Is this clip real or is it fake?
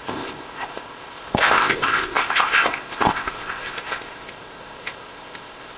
fake